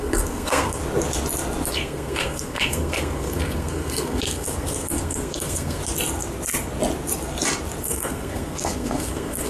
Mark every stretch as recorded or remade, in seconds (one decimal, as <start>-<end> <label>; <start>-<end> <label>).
0.0-0.8 remade; 0.8-1.7 recorded; 1.7-5.8 remade; 5.8-7.8 recorded; 7.8-9.5 remade